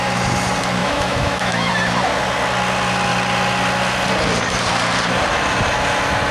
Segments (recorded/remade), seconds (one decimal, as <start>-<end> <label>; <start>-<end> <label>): 0.0-0.8 recorded; 0.8-1.7 remade; 1.7-6.3 recorded